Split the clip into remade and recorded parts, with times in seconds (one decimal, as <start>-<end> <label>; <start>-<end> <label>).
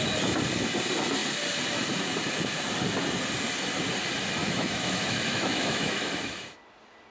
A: 0.0-4.4 recorded; 4.4-6.6 remade; 6.6-7.1 recorded